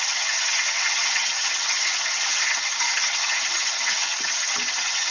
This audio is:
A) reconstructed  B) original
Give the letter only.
A